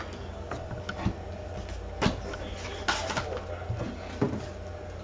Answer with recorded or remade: recorded